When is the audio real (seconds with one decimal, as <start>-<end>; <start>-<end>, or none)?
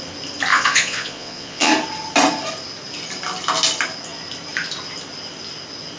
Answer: 0.0-0.5; 1.7-6.0